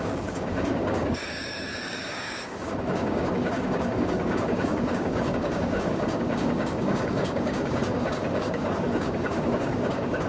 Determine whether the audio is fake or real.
fake